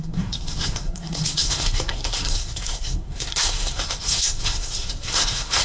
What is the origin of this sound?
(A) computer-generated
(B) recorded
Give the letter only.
A